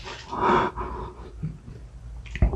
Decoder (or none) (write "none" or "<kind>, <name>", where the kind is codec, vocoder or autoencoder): none